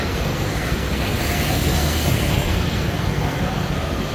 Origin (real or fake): fake